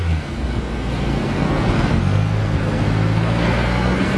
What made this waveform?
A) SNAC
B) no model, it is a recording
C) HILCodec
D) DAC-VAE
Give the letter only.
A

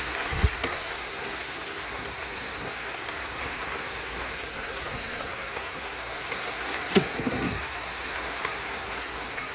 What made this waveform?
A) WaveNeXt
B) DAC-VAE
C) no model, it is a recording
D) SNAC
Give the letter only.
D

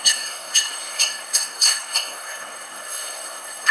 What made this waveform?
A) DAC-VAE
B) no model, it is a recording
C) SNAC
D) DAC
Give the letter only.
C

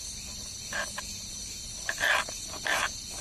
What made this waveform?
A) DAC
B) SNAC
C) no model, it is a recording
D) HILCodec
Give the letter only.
C